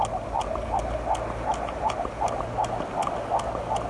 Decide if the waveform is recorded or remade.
recorded